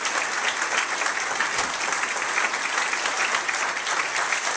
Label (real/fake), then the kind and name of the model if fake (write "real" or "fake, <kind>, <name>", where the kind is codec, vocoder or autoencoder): real